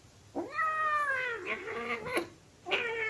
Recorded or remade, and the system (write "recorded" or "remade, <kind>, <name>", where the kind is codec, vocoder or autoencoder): recorded